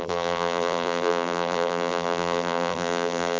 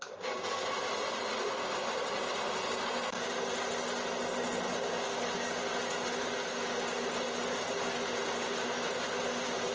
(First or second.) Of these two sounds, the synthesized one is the first